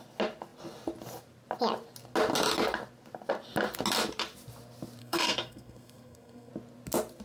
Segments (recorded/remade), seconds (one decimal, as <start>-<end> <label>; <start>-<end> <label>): 0.0-5.0 recorded; 5.0-6.5 remade; 6.5-7.2 recorded